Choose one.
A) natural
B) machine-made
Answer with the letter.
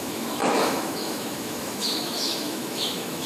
B